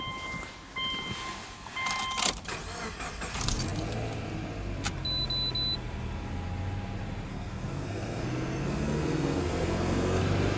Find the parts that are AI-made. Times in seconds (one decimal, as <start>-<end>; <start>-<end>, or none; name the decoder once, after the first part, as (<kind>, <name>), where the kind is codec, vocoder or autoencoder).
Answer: 7.3-10.2 (codec, SNAC)